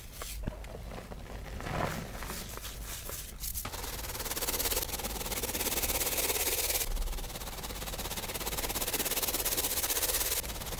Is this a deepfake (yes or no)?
no